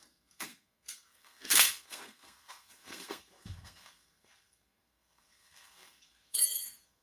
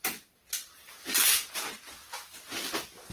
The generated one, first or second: first